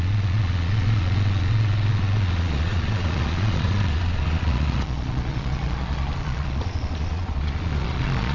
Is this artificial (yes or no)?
yes